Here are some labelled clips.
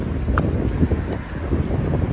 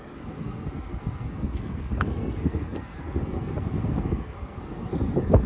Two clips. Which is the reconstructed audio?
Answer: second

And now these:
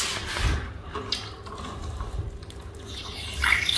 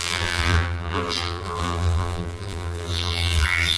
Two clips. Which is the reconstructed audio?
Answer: second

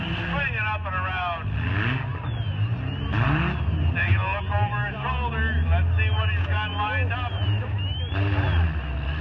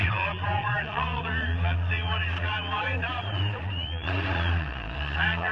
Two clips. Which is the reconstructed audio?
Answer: second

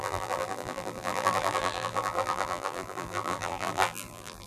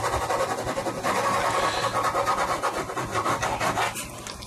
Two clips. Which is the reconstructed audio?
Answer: first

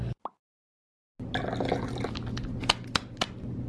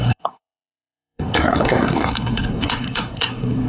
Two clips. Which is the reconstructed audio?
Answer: second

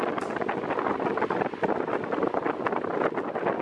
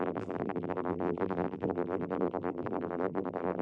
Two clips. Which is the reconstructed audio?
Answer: second